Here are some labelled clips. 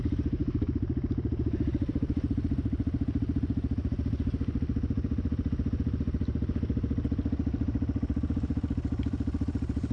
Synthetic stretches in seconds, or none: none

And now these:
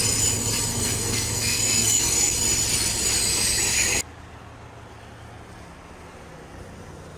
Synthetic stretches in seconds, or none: 0.7-2.3 (codec, SNAC)

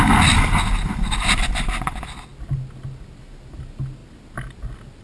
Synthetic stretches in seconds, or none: none

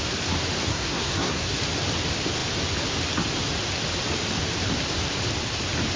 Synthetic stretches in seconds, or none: 0.7-1.6 (codec, SNAC)

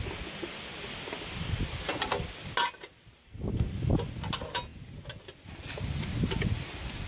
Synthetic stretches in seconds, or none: 3.2-3.7 (codec, SNAC)

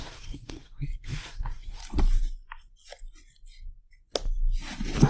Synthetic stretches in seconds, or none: 0.0-1.8 (codec, SNAC)

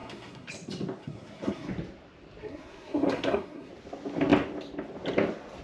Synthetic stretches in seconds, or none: 0.0-0.5 (codec, SNAC); 1.0-1.7; 2.4-3.7